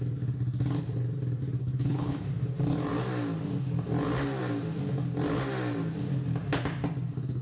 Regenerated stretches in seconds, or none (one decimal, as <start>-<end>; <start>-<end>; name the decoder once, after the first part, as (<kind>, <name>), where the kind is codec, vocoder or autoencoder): 1.6-2.2 (codec, HILCodec)